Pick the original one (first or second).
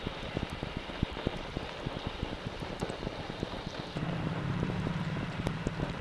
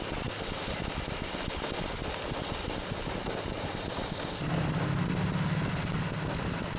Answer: second